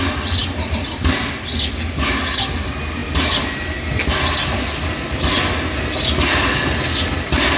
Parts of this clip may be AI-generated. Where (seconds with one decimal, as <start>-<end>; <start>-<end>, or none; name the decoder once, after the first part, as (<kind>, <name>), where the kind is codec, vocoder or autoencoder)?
none